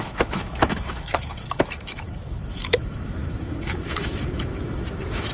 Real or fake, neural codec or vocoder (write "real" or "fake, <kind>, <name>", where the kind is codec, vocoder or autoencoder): fake, autoencoder, DAC-VAE